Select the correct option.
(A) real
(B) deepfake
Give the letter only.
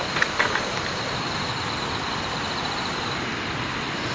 A